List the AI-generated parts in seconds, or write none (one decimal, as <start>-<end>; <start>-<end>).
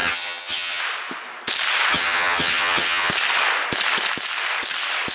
0.0-0.8; 1.9-3.1